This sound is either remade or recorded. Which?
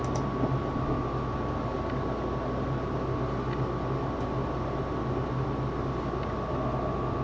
recorded